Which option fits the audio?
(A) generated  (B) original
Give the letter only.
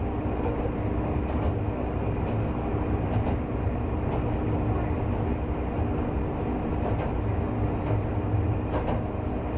B